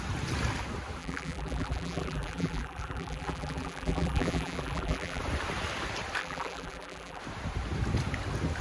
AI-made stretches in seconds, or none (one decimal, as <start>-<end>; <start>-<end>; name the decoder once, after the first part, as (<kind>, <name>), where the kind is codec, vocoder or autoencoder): 1.0-5.2 (vocoder, BigVGAN v2); 6.2-7.2